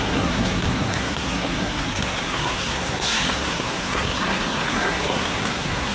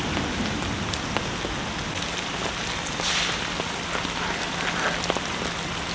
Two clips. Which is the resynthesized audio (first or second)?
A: first